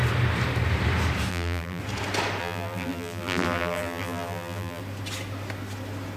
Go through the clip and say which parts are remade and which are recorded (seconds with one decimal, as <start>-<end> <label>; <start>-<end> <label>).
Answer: 0.0-1.3 recorded; 1.3-1.8 remade; 1.8-2.4 recorded; 2.4-4.8 remade; 4.8-6.2 recorded